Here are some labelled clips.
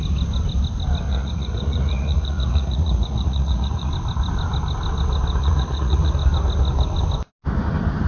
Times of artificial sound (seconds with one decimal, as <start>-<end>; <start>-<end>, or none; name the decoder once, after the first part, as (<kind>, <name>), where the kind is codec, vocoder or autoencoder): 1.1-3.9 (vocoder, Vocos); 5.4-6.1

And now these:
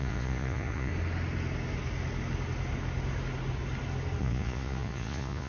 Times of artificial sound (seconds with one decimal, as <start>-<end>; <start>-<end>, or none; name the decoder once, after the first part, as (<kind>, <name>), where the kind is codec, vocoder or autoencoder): 0.0-0.9 (vocoder, Vocos); 4.2-5.5

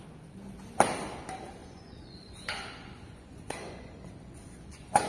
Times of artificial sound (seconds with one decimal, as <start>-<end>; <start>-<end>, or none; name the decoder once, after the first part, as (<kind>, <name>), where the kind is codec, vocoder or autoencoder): 1.6-5.1 (vocoder, Vocos)

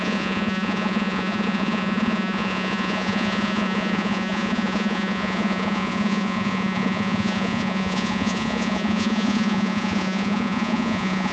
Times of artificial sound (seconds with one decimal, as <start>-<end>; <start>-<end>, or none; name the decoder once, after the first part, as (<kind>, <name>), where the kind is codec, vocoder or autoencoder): 0.0-11.3 (vocoder, Vocos)